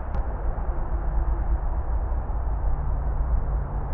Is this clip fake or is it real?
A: real